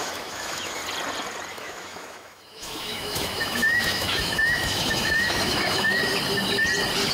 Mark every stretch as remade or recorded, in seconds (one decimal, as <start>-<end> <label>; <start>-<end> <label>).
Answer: 0.0-0.8 remade; 0.8-1.5 recorded; 1.5-6.0 remade; 6.0-7.1 recorded